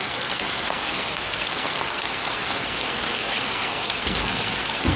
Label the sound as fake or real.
fake